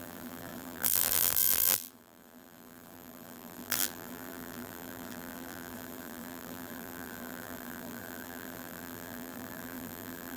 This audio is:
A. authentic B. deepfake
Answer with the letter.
B